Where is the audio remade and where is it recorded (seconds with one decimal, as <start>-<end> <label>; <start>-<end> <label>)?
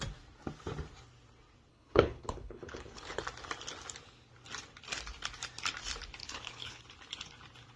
0.0-1.7 recorded; 1.7-3.2 remade; 3.2-6.2 recorded; 6.2-6.8 remade; 6.8-7.8 recorded